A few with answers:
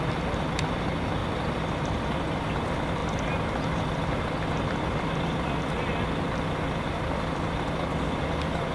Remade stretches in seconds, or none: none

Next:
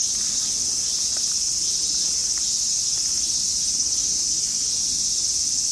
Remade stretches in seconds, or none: none

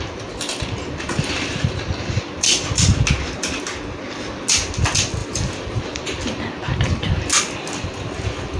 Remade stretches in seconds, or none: 5.2-5.8

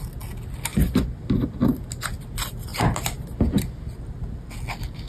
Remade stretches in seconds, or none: 2.7-4.0

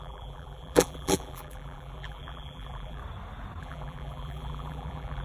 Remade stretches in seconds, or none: 0.0-3.0; 3.6-5.2